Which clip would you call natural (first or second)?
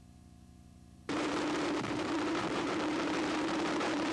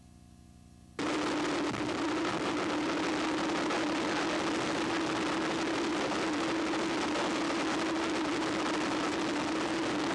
second